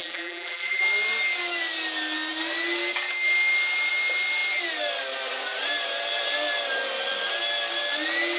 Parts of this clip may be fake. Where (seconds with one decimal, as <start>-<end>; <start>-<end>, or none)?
0.0-0.8